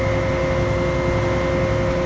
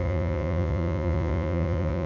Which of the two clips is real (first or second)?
first